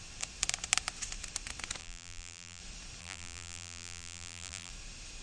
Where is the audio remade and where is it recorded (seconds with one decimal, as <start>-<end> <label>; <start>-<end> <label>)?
0.0-1.8 recorded; 1.8-2.6 remade; 2.6-3.0 recorded; 3.0-4.7 remade; 4.7-5.2 recorded

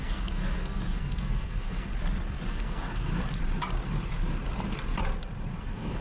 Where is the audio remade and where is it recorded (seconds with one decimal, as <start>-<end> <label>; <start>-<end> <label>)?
0.0-1.9 remade; 1.9-2.5 recorded; 2.5-3.1 remade; 3.1-5.6 recorded; 5.6-6.0 remade

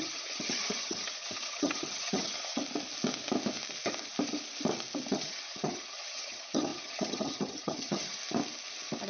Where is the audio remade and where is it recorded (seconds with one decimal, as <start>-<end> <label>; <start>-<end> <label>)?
0.0-2.6 remade; 2.6-5.1 recorded; 5.1-8.2 remade; 8.2-9.1 recorded

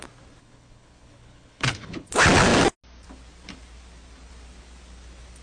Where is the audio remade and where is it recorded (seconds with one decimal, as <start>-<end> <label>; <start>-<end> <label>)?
0.0-0.4 recorded; 0.4-2.1 remade; 2.1-5.4 recorded

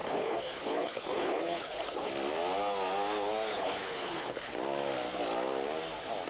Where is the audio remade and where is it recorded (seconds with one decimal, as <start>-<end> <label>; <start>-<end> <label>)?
0.0-2.1 remade; 2.1-3.5 recorded; 3.5-4.5 remade; 4.5-6.3 recorded

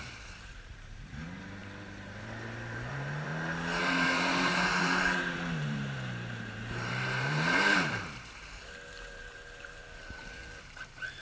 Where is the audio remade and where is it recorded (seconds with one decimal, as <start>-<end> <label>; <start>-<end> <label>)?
0.0-3.3 remade; 3.3-3.8 recorded; 3.8-11.2 remade

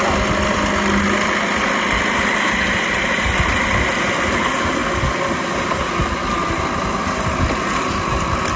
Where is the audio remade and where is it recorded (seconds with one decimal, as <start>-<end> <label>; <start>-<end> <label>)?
0.0-8.6 recorded